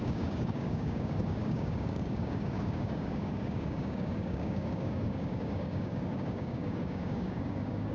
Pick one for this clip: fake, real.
fake